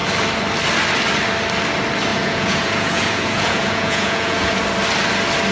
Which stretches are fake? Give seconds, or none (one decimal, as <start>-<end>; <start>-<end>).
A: 2.1-4.6